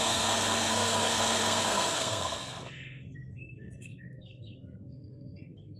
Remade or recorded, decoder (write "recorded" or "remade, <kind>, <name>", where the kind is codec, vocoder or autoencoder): remade, codec, SNAC